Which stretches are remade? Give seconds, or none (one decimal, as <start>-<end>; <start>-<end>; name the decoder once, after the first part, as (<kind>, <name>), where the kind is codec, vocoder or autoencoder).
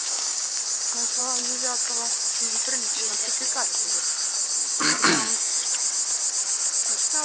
0.0-0.6 (codec, DAC); 4.6-5.5